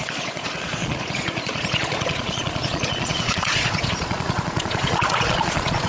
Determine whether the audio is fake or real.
fake